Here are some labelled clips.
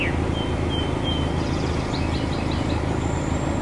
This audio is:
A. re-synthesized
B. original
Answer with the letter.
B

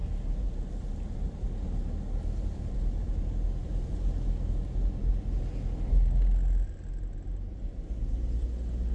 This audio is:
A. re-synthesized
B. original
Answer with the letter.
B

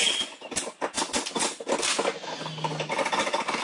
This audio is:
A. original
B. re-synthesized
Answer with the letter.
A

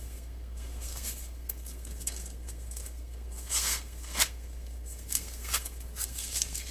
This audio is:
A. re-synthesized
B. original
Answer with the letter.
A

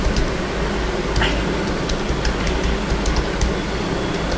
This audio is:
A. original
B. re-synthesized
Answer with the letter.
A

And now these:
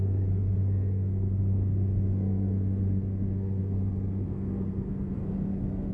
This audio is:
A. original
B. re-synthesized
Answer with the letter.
B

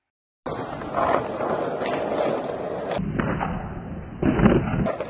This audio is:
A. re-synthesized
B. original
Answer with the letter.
B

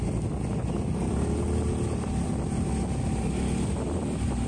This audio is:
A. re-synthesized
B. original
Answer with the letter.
B